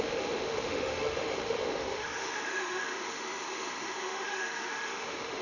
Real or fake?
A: fake